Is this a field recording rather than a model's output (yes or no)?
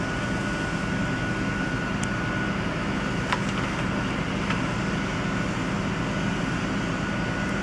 yes